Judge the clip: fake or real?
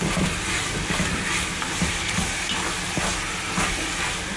real